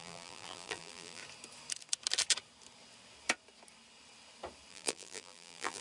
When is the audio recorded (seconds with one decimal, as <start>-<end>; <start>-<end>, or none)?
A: 1.2-4.7